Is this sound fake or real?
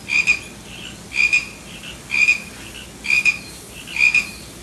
real